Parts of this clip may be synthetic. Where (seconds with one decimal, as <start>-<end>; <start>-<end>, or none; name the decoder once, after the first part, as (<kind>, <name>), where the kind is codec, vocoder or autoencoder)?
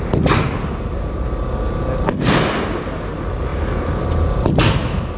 none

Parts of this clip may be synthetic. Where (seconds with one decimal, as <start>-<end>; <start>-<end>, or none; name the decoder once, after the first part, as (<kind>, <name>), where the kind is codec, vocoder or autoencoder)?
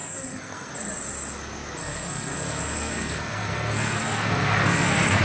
0.0-0.7 (codec, SNAC); 1.8-5.2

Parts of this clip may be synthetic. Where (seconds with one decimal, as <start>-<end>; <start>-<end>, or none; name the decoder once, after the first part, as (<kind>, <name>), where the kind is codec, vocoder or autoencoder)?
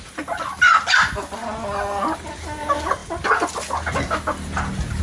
none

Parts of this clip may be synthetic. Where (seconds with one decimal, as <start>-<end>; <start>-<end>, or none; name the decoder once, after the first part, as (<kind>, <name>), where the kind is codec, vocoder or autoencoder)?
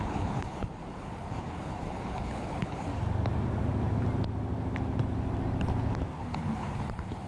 0.0-2.9 (codec, HILCodec); 6.2-7.3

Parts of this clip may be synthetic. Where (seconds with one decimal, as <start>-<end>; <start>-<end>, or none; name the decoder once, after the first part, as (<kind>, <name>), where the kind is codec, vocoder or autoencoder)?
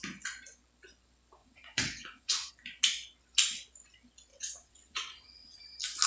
1.4-2.5 (vocoder, WaveNeXt); 4.3-5.6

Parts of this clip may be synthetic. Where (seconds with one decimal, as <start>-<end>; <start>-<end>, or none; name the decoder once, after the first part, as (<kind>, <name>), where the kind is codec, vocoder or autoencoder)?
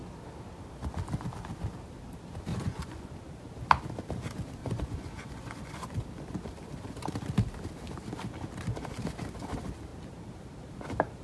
2.5-3.1 (vocoder, Vocos); 4.6-5.7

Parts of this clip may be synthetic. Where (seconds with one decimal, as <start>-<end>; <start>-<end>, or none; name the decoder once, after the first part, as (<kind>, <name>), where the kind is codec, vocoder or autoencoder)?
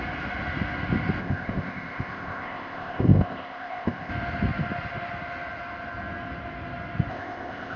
1.2-4.1 (codec, ZipCodec); 7.1-7.8